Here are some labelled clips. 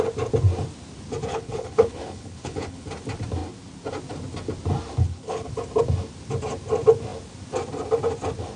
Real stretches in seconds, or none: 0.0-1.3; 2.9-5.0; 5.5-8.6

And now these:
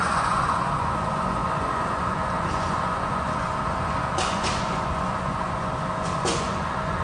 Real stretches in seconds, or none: none

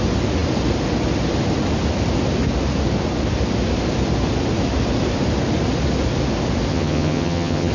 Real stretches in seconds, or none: 0.0-6.7

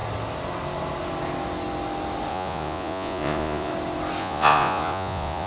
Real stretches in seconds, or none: 0.0-2.3; 3.7-4.2

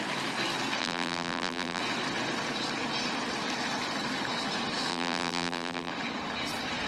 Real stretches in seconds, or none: 0.0-0.8; 1.8-4.9; 5.9-6.9

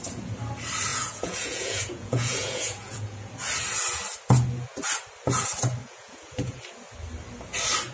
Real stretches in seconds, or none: 0.0-0.9; 3.3-5.8; 6.6-7.9

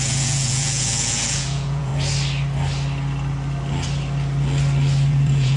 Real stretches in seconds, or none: 1.9-5.1

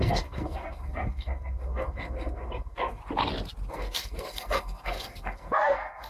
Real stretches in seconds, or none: 3.0-3.7